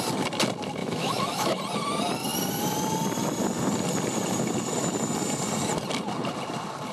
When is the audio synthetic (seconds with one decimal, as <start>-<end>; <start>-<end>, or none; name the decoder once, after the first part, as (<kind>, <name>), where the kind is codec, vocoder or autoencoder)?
0.8-1.6 (autoencoder, DAC-VAE)